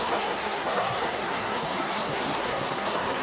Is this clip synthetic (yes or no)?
yes